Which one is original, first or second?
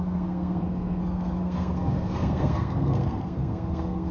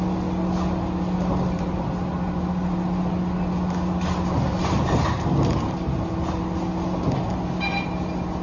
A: second